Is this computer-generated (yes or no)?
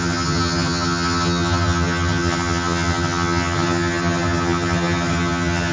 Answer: yes